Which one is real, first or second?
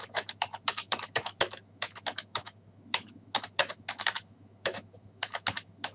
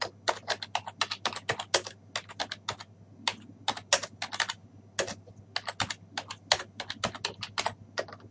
second